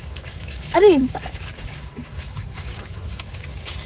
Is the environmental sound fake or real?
fake